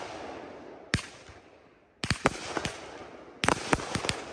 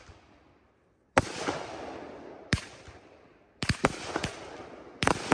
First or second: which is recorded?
first